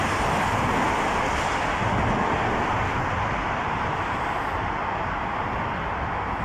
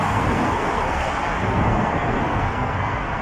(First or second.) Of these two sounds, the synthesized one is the second